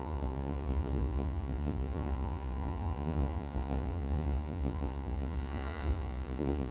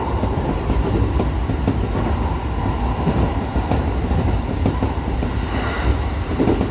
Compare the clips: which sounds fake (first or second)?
first